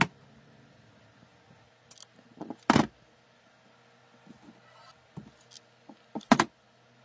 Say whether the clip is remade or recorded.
recorded